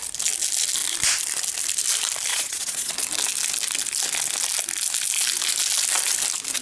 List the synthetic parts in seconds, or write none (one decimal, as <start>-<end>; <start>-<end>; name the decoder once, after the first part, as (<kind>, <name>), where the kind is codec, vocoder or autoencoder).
2.3-2.9 (vocoder, Vocos)